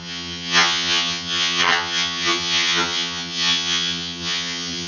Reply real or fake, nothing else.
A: fake